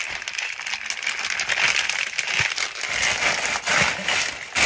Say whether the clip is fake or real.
real